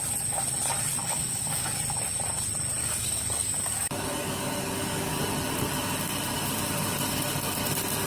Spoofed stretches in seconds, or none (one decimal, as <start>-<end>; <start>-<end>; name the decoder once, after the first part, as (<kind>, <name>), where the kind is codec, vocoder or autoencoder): 1.0-1.8 (codec, DAC); 2.8-5.2